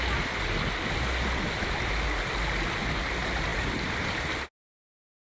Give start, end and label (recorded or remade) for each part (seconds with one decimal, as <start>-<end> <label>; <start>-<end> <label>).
0.0-5.3 recorded